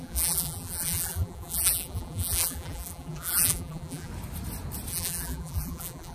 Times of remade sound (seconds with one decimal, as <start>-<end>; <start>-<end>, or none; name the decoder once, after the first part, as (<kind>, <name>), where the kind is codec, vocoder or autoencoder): 0.0-4.1 (vocoder, BigVGAN v2); 4.9-6.1